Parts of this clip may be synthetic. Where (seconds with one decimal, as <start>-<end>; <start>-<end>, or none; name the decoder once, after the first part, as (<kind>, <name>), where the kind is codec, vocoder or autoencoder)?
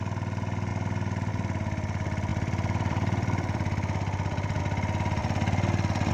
2.3-4.6 (vocoder, BigVGAN v2); 5.2-6.1